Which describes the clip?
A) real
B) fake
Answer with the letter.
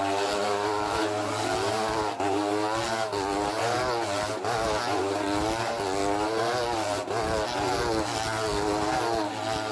A